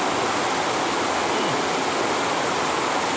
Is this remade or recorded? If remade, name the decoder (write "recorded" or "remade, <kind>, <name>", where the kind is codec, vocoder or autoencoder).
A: recorded